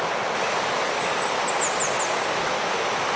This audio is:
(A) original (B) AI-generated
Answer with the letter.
A